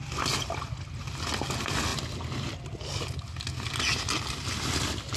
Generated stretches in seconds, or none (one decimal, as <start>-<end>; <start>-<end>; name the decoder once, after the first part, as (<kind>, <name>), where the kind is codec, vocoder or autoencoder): none